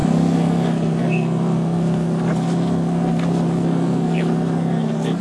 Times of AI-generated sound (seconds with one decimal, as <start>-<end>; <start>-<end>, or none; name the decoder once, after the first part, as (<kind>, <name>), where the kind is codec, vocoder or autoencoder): 0.0-5.2 (codec, SNAC)